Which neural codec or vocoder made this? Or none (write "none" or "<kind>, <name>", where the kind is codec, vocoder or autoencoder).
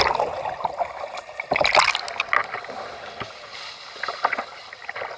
none